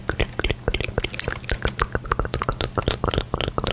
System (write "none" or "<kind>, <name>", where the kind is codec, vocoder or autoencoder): none